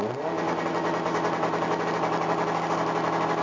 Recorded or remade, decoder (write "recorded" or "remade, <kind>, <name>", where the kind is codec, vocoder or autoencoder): recorded